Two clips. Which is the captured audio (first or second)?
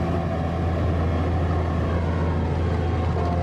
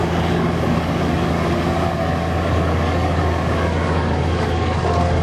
first